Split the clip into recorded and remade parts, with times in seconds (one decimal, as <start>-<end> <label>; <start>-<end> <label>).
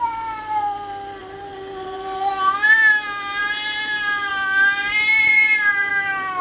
0.0-1.2 recorded; 1.2-2.3 remade; 2.3-3.4 recorded; 3.4-4.3 remade; 4.3-4.8 recorded; 4.8-5.9 remade; 5.9-6.4 recorded